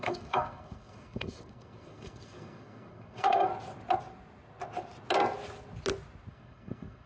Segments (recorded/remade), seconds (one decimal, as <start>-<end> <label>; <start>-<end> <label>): 0.0-3.5 remade; 3.5-6.3 recorded; 6.3-7.1 remade